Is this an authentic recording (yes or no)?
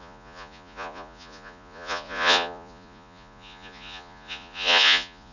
no